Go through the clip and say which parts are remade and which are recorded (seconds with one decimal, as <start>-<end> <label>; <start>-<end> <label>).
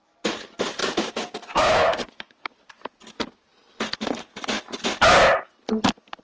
0.0-0.8 recorded; 0.8-2.6 remade; 2.6-6.2 recorded